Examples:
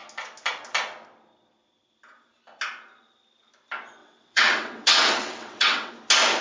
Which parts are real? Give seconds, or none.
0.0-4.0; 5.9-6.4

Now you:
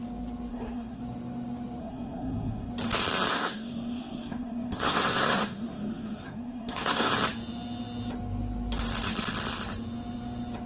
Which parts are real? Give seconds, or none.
0.0-0.5; 1.0-1.8; 2.7-3.3; 7.1-10.7

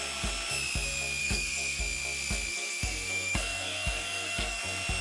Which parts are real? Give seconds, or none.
0.0-1.2; 1.8-2.5; 4.6-5.0

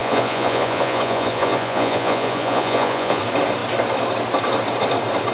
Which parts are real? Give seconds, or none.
3.2-5.3

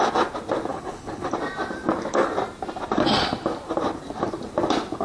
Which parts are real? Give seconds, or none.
0.0-0.7; 1.3-5.0

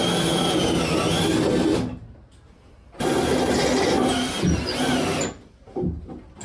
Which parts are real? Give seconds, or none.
0.0-6.4

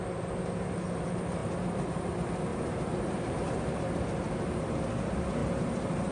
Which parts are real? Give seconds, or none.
0.0-1.4; 2.0-2.5; 3.8-5.4